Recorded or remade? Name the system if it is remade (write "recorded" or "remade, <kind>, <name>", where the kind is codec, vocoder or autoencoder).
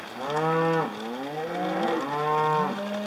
recorded